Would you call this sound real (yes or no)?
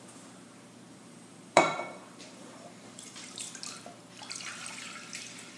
no